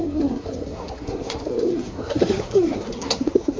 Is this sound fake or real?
fake